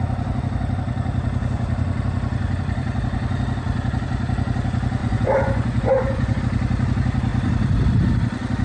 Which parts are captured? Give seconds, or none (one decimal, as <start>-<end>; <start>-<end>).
0.0-5.0; 6.4-8.6